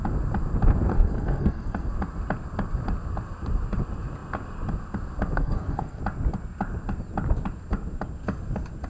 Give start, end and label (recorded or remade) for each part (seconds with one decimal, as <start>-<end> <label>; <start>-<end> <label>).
0.0-0.9 recorded; 0.9-1.9 remade; 1.9-5.4 recorded; 5.4-6.0 remade; 6.0-8.9 recorded